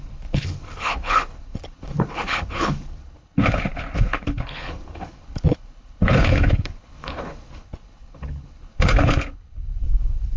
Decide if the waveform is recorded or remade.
remade